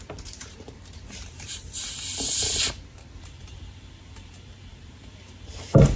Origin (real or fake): fake